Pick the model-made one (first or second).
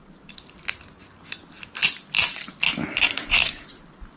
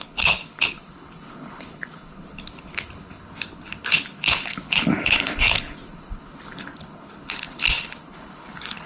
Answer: second